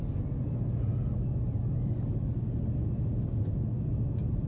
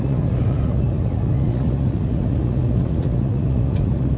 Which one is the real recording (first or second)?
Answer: first